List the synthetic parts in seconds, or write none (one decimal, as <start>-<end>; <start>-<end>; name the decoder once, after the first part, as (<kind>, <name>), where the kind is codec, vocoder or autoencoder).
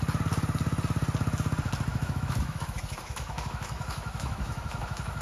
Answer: 1.9-5.2 (autoencoder, DAC-VAE)